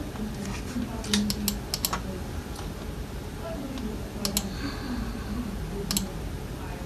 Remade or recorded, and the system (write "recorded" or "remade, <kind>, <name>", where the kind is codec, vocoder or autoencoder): recorded